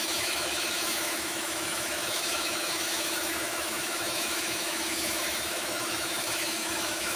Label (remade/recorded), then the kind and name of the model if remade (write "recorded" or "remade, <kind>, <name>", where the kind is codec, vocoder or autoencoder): remade, autoencoder, DAC-VAE